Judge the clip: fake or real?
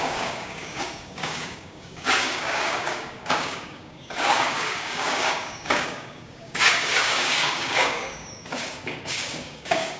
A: fake